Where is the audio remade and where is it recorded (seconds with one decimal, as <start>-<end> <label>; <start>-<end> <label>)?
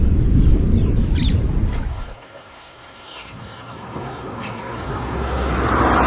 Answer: 0.0-1.9 recorded; 1.9-5.6 remade; 5.6-6.1 recorded